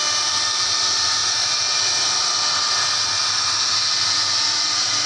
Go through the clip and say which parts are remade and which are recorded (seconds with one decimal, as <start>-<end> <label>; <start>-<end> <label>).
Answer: 0.0-5.1 recorded